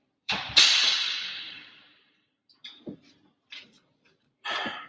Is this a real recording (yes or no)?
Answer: no